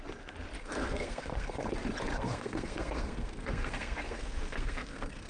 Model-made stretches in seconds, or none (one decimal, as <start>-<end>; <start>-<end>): 0.6-1.7; 2.1-5.3